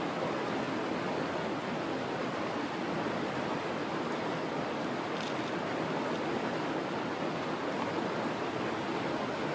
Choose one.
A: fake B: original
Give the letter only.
B